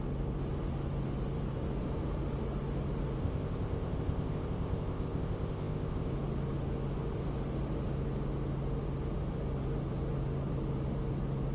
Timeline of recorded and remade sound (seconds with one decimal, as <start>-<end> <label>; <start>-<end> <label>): 0.0-3.2 recorded; 3.2-6.1 remade; 6.1-11.5 recorded